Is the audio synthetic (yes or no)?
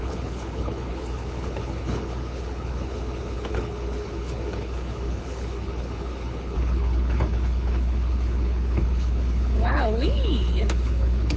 yes